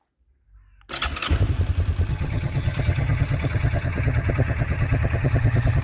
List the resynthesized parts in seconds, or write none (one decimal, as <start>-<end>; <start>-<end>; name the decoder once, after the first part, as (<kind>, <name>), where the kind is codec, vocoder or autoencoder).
2.1-5.8 (vocoder, HiFi-GAN)